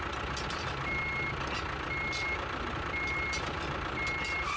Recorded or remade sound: recorded